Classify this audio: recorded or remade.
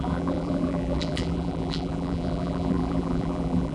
remade